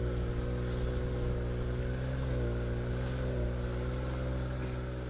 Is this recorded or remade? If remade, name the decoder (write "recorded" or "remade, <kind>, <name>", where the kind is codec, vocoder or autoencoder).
recorded